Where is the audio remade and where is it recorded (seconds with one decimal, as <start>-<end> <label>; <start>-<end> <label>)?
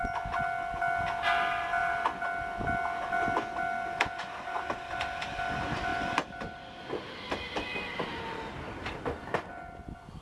0.0-10.2 recorded